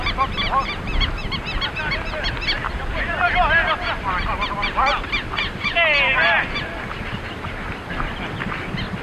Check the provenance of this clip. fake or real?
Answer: real